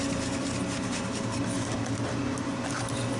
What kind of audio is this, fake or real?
real